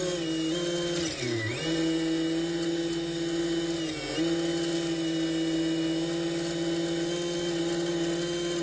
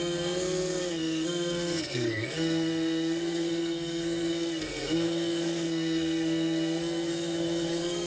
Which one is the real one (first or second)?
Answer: first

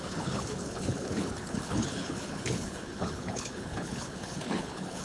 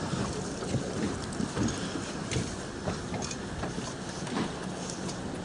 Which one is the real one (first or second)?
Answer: second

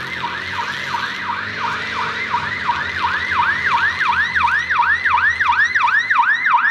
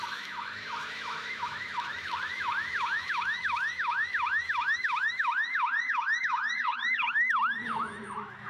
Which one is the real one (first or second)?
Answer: first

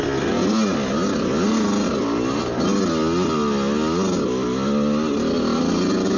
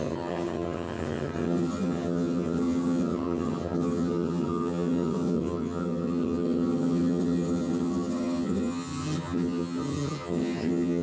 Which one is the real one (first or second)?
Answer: first